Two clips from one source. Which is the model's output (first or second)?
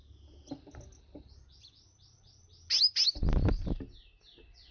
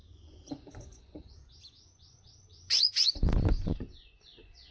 second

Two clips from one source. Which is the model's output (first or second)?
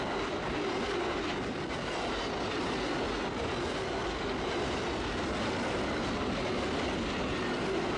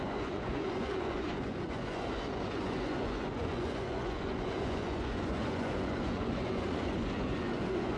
second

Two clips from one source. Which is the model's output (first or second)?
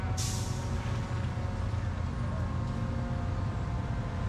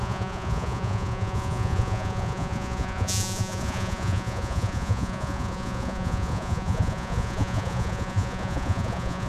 second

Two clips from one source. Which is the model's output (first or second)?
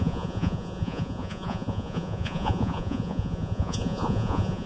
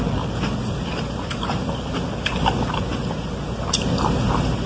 first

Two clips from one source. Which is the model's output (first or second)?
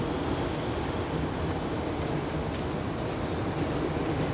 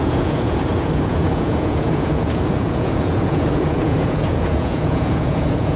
second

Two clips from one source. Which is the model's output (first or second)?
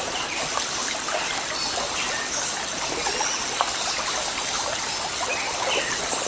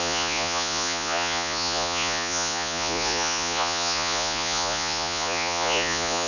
second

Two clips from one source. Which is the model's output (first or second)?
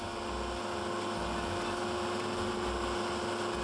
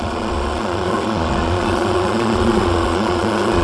second